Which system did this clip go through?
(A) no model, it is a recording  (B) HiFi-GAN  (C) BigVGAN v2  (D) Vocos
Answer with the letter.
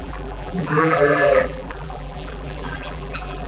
C